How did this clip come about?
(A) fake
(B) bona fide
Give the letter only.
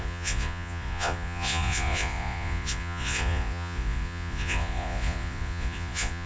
A